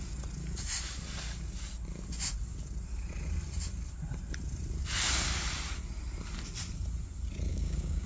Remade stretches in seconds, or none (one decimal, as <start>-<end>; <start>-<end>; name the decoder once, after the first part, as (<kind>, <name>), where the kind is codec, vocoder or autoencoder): 7.5-8.1 (codec, DAC)